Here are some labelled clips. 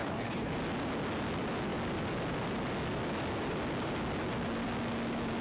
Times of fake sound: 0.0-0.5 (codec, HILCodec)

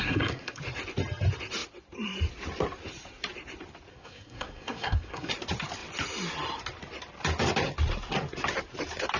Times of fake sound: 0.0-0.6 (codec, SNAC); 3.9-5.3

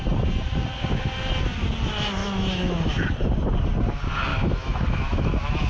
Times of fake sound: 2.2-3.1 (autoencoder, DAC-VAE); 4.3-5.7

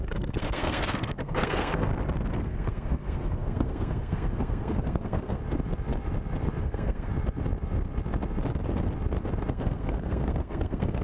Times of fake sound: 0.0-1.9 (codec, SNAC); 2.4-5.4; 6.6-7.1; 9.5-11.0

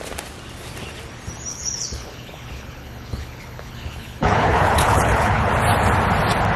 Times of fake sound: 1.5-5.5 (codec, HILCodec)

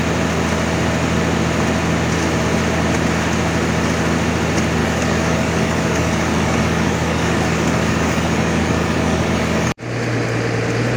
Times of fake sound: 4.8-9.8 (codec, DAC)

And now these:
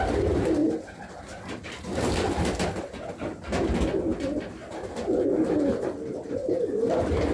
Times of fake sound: none